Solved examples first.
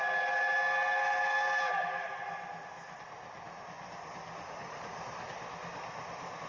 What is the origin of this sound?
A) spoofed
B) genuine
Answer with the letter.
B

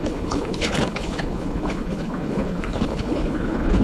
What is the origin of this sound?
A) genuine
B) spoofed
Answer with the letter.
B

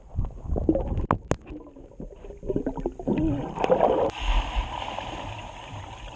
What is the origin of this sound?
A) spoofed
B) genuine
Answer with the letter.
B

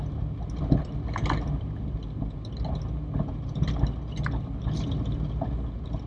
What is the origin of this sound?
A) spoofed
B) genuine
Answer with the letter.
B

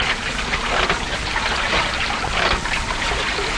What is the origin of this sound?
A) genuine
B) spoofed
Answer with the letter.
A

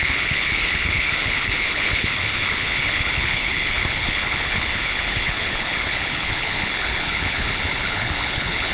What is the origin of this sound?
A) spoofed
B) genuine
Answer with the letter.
A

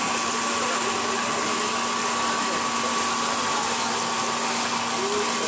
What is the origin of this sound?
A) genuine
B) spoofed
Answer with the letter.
A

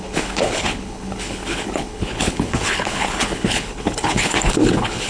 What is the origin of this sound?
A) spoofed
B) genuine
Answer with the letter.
A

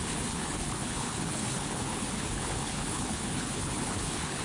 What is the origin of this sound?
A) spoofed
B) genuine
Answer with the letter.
A